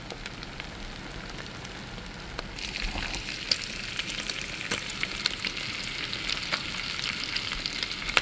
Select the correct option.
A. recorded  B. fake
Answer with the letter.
A